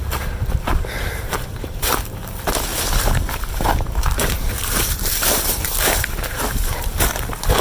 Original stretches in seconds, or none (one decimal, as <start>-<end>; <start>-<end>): 0.0-1.0; 1.9-2.7; 6.5-7.6